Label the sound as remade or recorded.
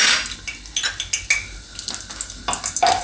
recorded